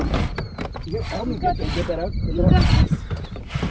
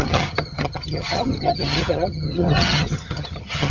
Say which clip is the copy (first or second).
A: second